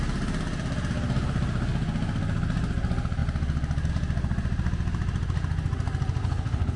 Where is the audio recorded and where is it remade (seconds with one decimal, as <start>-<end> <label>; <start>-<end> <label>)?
0.0-6.2 recorded; 6.2-6.8 remade